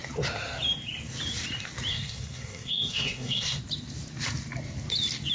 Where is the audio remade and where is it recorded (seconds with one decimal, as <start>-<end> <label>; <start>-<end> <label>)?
0.0-1.9 recorded; 1.9-3.6 remade; 3.6-5.3 recorded